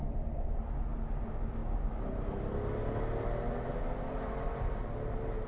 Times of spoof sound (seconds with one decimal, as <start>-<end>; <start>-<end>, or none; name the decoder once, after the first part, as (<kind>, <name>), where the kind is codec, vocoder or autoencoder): none

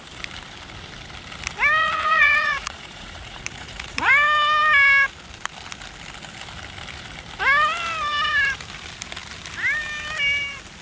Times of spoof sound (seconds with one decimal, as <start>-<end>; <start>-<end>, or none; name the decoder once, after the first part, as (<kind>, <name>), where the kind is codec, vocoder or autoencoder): 1.8-4.1 (vocoder, Vocos)

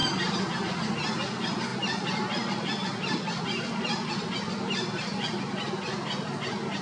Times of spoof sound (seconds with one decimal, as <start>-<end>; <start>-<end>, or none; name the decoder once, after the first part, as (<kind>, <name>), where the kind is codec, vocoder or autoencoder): none

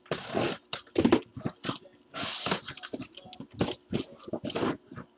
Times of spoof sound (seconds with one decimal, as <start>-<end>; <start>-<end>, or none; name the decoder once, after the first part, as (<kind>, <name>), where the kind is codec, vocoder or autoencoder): none

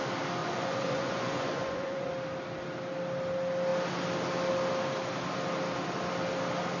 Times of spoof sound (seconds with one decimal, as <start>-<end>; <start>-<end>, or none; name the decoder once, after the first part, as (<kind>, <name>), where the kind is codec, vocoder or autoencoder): 0.4-2.1 (vocoder, Vocos)

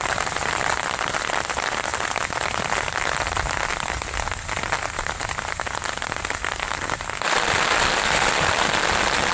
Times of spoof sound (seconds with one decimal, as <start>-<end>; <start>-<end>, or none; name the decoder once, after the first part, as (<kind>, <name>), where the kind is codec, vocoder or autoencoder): none

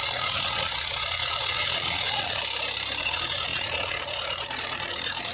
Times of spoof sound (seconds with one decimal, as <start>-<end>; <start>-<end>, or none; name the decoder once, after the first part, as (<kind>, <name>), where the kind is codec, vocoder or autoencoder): 0.0-2.4 (vocoder, Vocos); 3.0-5.3